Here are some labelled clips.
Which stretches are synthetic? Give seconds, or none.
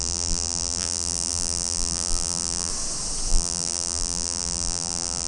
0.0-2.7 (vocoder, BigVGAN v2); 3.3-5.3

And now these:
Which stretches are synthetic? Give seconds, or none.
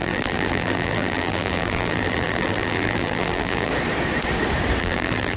0.0-3.7 (vocoder, BigVGAN v2); 4.8-5.4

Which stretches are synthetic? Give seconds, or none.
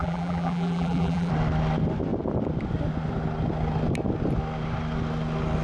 0.0-1.3 (vocoder, BigVGAN v2)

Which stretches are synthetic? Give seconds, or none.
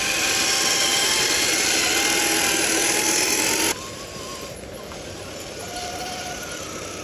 0.9-1.5 (vocoder, BigVGAN v2); 4.3-6.0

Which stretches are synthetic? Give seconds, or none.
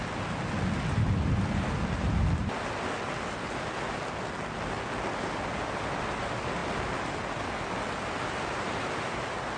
none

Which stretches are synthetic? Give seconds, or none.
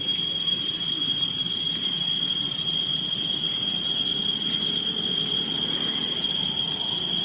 0.0-1.4 (vocoder, BigVGAN v2); 2.3-7.2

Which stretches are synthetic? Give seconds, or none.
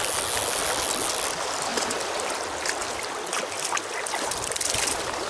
none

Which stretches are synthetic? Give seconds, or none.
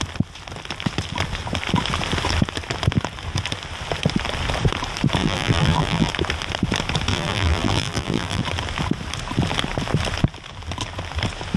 5.2-6.1 (vocoder, BigVGAN v2); 7.1-8.4